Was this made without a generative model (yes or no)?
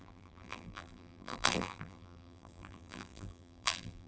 no